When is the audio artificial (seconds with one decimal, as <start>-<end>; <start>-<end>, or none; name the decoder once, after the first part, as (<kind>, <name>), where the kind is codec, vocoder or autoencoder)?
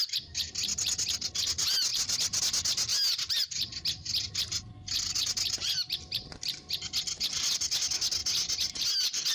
none